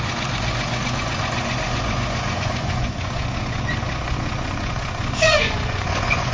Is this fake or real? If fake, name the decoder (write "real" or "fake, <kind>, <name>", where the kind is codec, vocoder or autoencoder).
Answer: fake, vocoder, Vocos